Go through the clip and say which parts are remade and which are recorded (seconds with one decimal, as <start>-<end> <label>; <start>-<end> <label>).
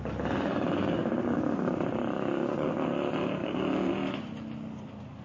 0.0-0.8 recorded; 0.8-2.7 remade; 2.7-3.4 recorded; 3.4-3.9 remade; 3.9-5.2 recorded